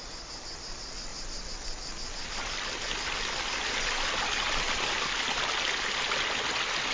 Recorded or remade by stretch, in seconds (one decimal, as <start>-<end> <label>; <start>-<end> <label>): 0.0-6.9 recorded